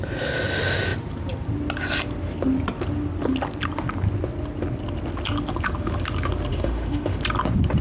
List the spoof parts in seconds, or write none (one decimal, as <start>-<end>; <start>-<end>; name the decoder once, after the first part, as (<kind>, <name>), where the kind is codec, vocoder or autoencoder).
6.5-7.2 (autoencoder, DAC-VAE)